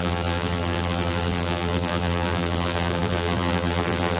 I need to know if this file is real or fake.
fake